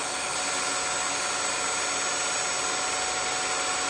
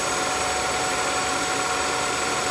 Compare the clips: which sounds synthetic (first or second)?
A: second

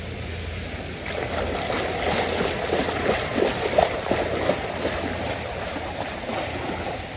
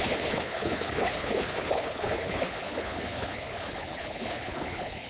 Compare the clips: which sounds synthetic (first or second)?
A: second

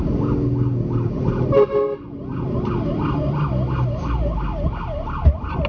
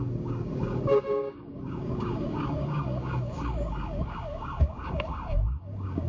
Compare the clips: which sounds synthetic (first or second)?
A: second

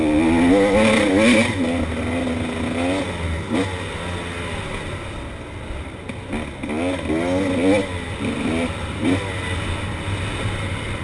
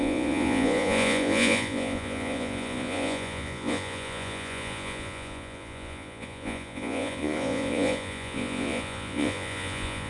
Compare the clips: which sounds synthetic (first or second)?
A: second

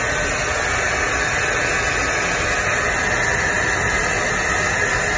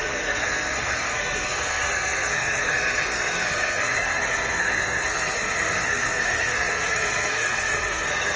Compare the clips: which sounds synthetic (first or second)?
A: second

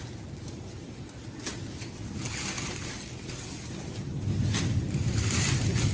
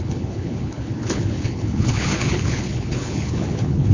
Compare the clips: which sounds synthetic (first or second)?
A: second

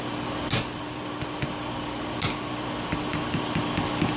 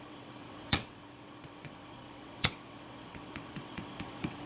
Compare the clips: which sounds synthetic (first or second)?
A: second